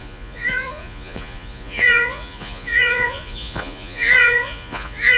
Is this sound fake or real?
fake